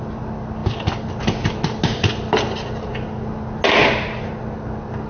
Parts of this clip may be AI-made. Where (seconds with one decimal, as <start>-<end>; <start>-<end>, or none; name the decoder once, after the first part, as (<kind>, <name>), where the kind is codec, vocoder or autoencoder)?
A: none